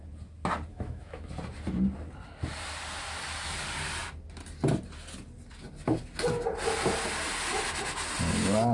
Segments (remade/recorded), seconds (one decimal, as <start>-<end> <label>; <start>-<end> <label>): 0.0-0.7 recorded; 0.7-1.3 remade; 1.3-8.7 recorded